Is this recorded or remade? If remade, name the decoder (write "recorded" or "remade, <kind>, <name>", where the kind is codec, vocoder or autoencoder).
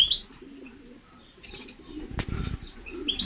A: recorded